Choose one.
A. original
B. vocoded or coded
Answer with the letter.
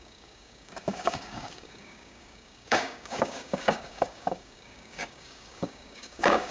B